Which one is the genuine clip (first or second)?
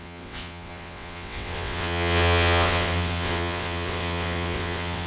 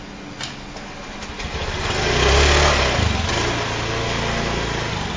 second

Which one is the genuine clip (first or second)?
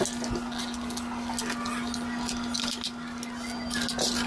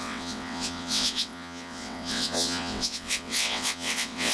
first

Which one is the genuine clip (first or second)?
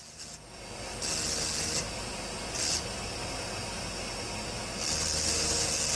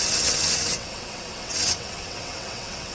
first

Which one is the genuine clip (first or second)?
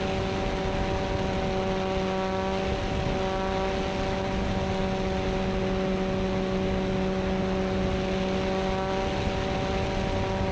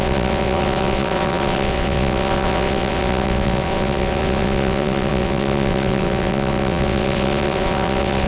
first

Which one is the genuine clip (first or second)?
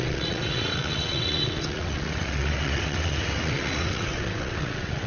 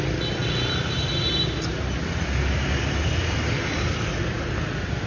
second